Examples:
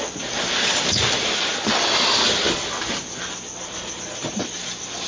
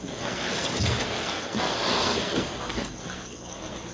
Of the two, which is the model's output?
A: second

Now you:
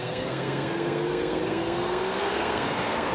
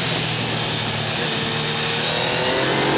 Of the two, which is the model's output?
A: first